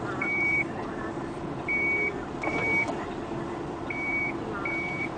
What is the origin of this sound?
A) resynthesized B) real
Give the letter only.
A